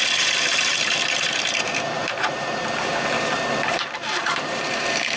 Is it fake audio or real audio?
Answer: fake